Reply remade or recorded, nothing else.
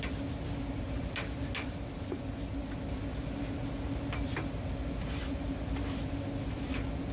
recorded